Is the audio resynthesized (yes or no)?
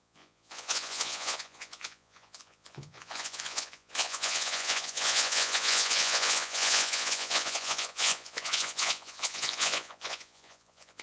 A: yes